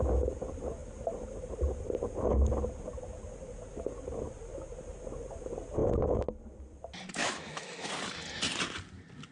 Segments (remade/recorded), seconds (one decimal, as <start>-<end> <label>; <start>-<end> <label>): 0.0-7.2 recorded; 7.2-7.9 remade; 7.9-9.3 recorded